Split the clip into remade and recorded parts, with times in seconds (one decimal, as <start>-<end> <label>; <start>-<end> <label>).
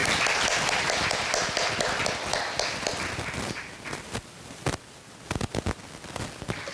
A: 0.0-6.7 recorded